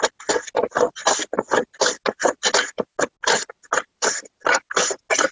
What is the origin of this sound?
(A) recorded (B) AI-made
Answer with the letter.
A